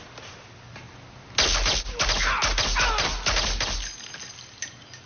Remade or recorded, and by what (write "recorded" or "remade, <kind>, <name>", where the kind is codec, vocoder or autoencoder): recorded